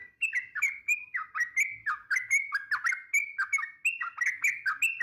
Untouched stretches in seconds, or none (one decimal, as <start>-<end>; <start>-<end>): 1.2-1.8; 2.5-5.0